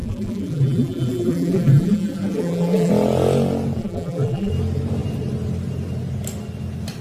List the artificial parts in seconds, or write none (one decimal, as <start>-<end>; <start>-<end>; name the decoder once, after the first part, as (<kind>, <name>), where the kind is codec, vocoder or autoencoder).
0.0-2.9 (vocoder, BigVGAN v2); 3.8-4.5